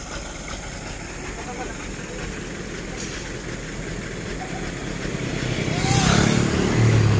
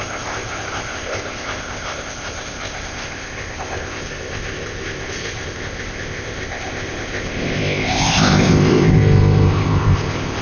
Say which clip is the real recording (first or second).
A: first